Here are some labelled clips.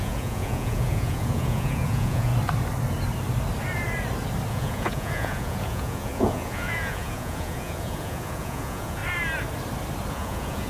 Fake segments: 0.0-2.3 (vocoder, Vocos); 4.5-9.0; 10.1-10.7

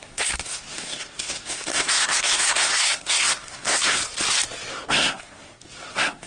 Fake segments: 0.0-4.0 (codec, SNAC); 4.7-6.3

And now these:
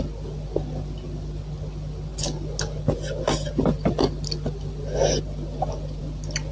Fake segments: none

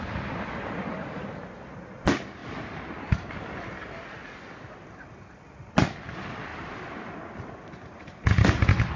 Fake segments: 2.4-3.3 (vocoder, BigVGAN v2); 6.5-7.1

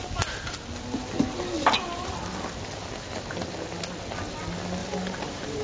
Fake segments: 4.8-5.6 (vocoder, BigVGAN v2)

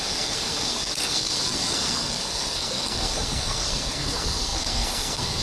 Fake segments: 0.0-5.4 (codec, SNAC)